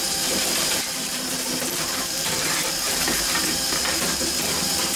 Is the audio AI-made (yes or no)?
yes